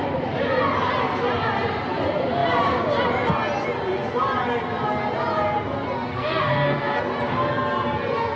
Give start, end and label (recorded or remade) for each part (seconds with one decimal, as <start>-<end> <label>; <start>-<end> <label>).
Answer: 0.0-6.1 recorded; 6.1-7.0 remade; 7.0-8.4 recorded